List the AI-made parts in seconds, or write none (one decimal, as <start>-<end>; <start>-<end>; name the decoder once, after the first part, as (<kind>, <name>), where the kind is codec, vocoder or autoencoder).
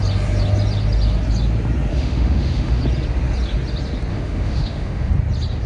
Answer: 1.9-2.8 (autoencoder, DAC-VAE); 4.1-5.1